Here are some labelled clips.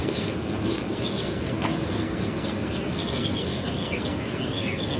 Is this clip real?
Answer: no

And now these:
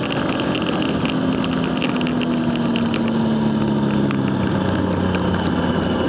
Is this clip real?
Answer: yes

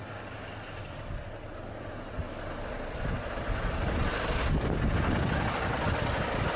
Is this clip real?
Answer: yes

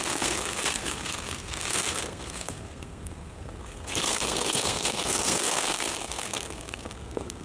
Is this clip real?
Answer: no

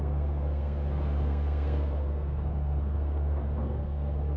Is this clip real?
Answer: no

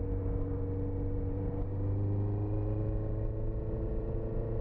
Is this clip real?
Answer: yes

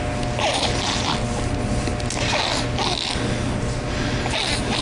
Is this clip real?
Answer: yes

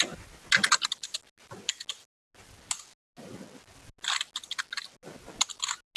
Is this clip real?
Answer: yes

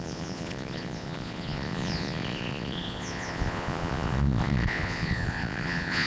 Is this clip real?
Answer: no